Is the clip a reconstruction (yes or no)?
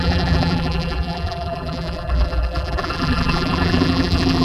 yes